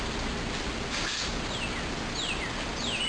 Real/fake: real